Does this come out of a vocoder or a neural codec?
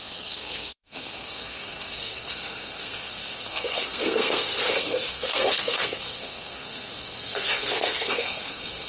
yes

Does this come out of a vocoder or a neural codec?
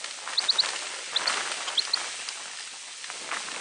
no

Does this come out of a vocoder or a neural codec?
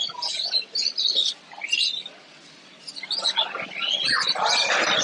no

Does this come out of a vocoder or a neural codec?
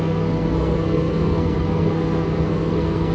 yes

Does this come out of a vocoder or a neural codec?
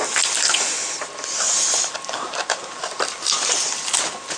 no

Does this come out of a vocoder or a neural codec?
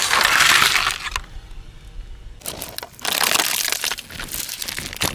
no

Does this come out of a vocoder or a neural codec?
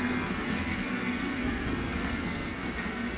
yes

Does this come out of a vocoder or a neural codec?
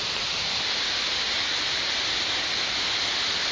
no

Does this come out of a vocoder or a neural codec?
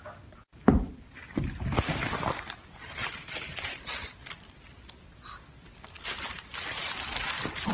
no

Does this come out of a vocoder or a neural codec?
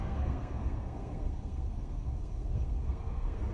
yes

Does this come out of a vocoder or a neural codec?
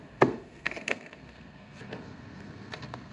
yes